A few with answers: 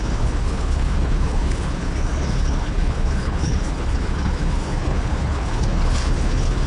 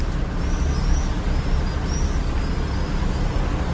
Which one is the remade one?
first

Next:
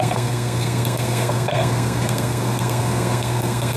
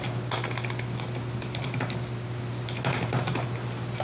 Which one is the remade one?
first